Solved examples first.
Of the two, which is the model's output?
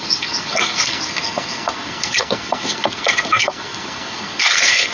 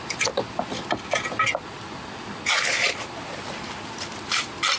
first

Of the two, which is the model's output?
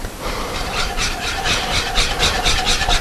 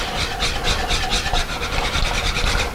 first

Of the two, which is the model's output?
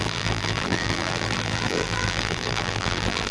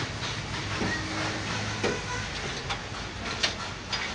first